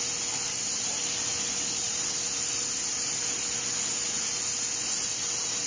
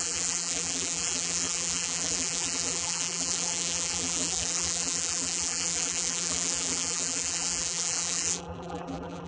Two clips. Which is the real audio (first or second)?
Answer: first